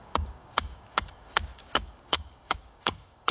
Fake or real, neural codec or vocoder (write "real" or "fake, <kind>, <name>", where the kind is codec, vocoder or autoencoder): fake, codec, DAC